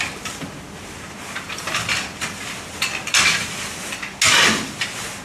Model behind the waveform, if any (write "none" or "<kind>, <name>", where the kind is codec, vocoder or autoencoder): none